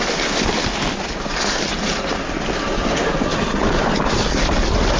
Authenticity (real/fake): real